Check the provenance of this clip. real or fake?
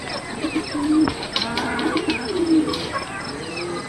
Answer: real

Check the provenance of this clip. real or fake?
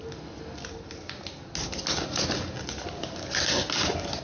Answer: real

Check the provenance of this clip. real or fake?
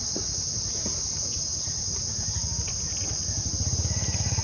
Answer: real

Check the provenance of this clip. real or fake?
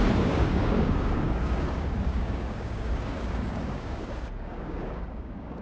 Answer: fake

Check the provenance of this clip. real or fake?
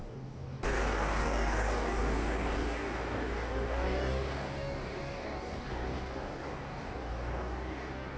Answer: fake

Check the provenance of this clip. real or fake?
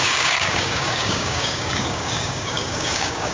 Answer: fake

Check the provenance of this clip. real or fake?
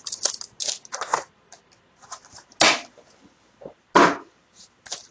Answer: real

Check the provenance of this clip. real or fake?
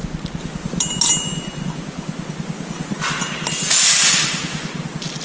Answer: real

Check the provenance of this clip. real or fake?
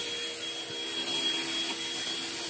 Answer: real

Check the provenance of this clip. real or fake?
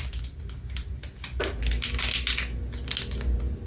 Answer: real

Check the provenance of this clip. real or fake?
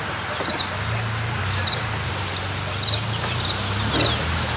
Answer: real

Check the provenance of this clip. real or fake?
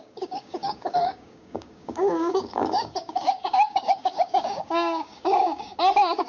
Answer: fake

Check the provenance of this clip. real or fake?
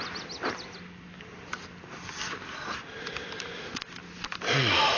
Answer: real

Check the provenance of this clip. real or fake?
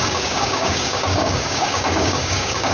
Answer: fake